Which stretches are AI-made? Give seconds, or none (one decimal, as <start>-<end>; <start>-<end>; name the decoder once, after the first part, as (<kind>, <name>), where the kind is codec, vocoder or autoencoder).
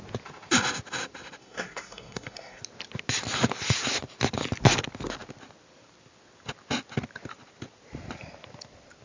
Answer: 1.4-2.6 (codec, SNAC)